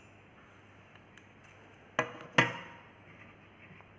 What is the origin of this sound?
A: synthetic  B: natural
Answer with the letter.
B